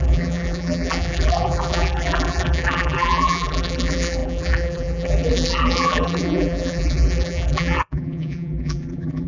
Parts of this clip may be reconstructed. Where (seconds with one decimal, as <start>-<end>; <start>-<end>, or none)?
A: 0.0-9.3